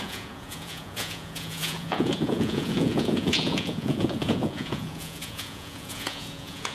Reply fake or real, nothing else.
fake